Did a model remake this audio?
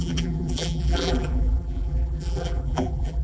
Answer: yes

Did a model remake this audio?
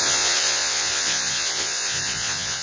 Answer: yes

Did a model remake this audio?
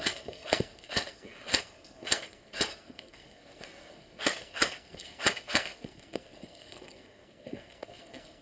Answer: yes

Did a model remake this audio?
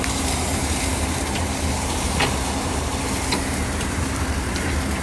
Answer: yes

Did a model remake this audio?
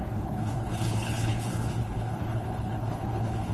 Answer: yes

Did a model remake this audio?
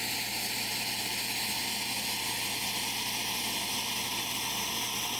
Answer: no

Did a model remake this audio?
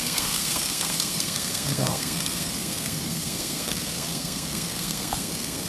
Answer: yes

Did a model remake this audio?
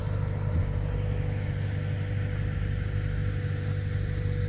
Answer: no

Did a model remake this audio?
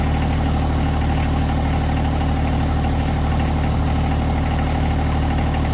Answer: no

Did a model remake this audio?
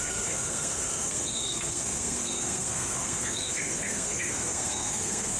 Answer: yes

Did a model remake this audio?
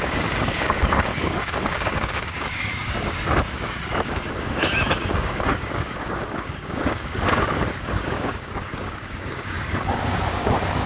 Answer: yes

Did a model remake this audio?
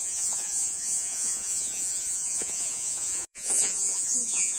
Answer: yes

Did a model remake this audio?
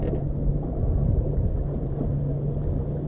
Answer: no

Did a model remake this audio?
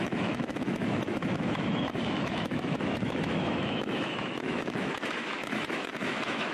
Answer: yes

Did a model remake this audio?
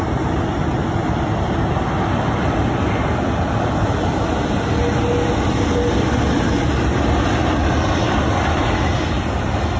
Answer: no